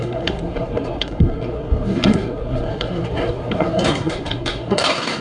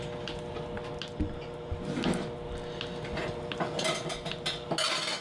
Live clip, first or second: second